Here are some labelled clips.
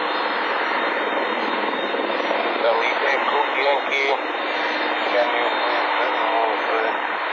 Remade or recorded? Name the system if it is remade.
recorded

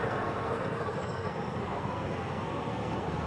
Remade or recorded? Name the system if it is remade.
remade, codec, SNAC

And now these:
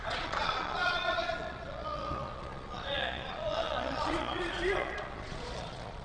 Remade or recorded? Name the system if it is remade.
remade, vocoder, Vocos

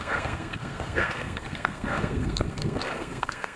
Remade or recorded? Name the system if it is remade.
remade, codec, SNAC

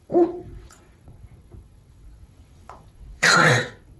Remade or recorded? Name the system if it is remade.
remade, vocoder, WaveNeXt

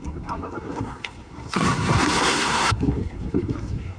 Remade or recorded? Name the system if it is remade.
remade, codec, SNAC